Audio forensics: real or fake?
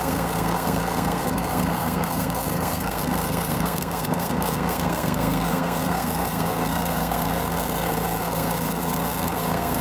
fake